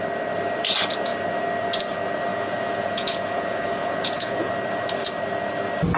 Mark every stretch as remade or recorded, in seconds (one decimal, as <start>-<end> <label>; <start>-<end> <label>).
0.0-2.3 recorded; 2.3-4.5 remade; 4.5-6.0 recorded